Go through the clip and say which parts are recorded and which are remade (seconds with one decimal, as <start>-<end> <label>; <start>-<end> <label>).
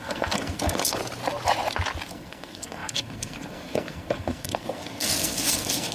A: 0.0-1.0 remade; 1.0-2.1 recorded; 2.1-5.9 remade